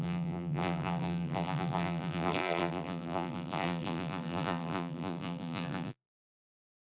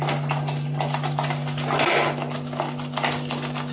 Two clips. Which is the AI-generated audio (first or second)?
first